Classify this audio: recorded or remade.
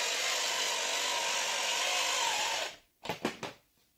remade